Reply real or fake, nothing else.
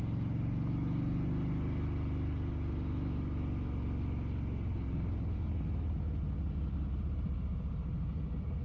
real